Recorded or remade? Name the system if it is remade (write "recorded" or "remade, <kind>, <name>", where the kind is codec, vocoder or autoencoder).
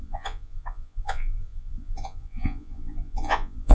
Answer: remade, vocoder, Vocos